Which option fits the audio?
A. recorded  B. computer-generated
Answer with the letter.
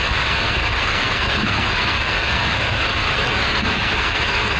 B